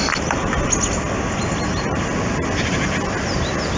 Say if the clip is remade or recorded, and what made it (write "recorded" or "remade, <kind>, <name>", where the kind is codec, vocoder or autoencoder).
recorded